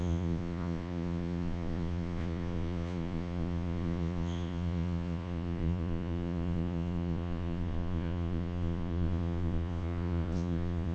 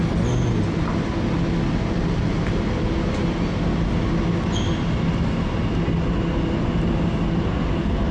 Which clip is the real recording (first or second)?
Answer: second